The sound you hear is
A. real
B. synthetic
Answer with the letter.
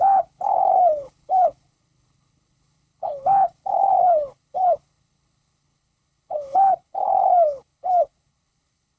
B